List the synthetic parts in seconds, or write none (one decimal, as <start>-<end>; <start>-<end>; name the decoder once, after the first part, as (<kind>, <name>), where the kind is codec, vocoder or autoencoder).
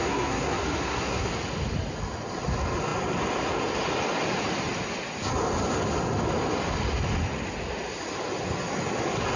0.0-1.3 (codec, SNAC)